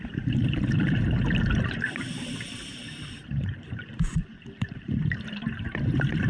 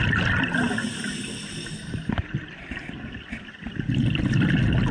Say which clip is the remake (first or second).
first